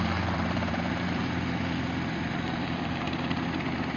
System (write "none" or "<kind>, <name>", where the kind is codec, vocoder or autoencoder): vocoder, BigVGAN v2